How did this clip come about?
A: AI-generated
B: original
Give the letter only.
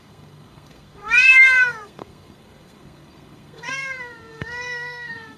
A